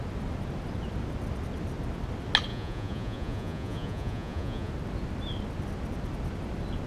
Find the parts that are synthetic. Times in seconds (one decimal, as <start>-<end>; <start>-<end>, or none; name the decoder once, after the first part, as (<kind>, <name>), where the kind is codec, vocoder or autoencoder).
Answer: 2.5-4.7 (vocoder, Vocos)